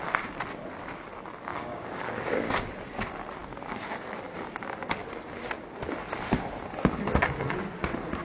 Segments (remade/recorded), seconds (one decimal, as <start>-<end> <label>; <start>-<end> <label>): 0.0-1.5 recorded; 1.5-2.7 remade; 2.7-8.2 recorded